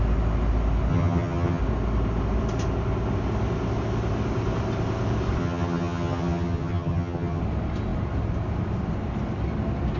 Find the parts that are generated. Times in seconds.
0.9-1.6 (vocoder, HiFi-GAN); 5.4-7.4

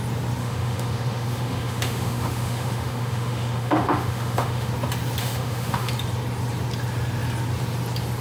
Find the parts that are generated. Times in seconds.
0.4-4.7 (autoencoder, DAC-VAE); 5.2-5.9

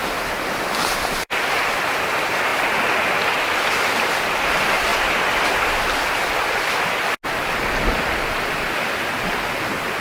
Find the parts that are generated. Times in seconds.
none